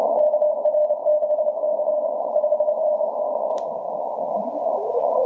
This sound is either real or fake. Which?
fake